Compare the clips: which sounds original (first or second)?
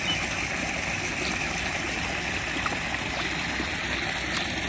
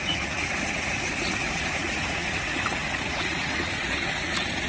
first